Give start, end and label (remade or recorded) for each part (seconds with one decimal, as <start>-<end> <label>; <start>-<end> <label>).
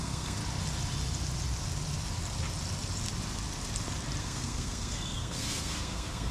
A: 0.0-0.4 remade; 0.4-4.2 recorded; 4.2-6.3 remade